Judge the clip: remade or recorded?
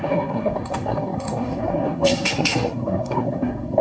remade